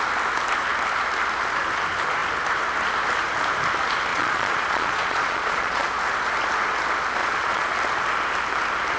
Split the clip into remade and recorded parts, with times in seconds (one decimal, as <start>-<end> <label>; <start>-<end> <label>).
0.0-4.1 recorded; 4.1-6.0 remade; 6.0-7.2 recorded; 7.2-7.7 remade; 7.7-9.0 recorded